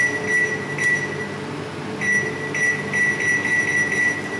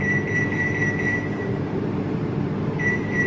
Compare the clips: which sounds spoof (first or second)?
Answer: second